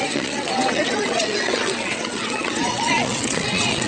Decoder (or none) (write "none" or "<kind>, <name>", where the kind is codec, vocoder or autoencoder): vocoder, WaveNeXt